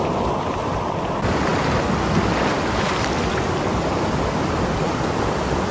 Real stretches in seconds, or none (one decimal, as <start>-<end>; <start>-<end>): 0.0-5.7